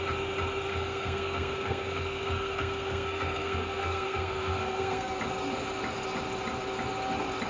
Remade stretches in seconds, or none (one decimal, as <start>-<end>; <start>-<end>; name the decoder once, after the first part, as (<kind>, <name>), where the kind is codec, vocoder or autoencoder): 0.7-5.2 (codec, SNAC)